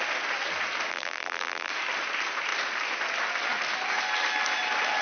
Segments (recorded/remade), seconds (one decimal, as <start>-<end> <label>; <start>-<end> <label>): 0.0-0.9 recorded; 0.9-1.7 remade; 1.7-5.0 recorded